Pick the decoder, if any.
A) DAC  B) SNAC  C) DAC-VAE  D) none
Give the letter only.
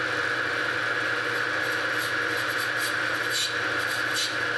D